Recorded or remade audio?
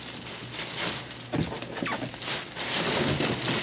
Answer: recorded